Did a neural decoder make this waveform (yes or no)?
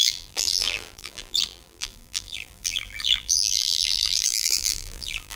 yes